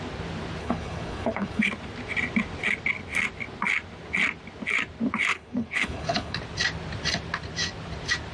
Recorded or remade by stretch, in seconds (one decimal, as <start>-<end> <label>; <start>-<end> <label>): 0.0-0.6 recorded; 0.6-1.7 remade; 1.7-5.3 recorded; 5.3-6.4 remade; 6.4-8.3 recorded